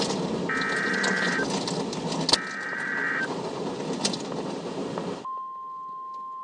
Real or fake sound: real